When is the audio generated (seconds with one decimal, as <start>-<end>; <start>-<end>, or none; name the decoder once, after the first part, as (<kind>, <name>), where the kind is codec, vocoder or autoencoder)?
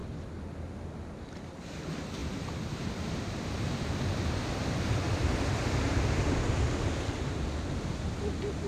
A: 2.2-4.0 (vocoder, BigVGAN v2); 4.6-5.5